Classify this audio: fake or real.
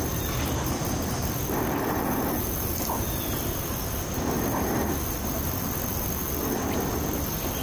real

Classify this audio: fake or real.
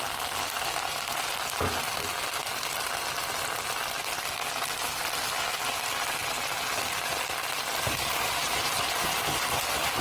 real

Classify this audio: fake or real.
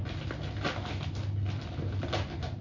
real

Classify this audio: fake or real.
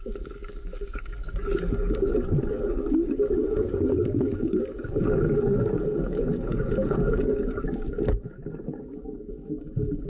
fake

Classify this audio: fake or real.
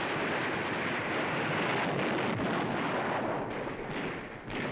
real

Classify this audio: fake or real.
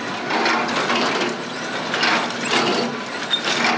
real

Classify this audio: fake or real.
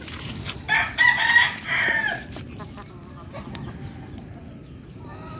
real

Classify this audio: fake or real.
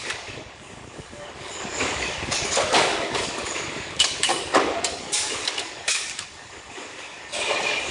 fake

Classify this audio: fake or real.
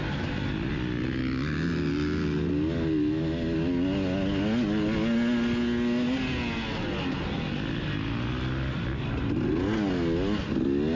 real